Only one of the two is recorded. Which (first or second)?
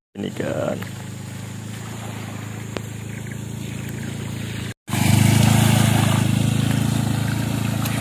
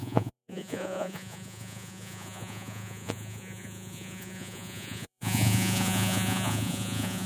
first